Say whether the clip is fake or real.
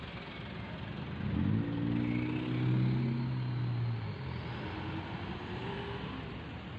real